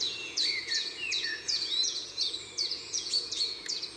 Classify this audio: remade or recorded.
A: remade